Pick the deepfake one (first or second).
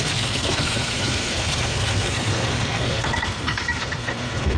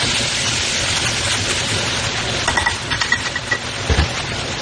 first